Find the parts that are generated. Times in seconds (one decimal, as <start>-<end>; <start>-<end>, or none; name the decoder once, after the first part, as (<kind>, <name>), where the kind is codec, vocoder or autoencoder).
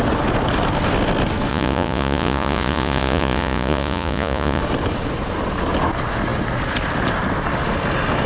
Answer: 1.5-4.6 (vocoder, Vocos)